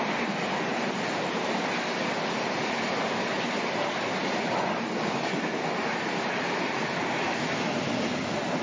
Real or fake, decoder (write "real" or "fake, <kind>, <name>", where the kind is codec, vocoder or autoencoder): real